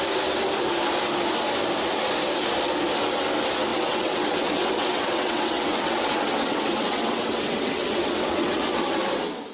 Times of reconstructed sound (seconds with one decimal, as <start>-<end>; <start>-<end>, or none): 3.7-8.9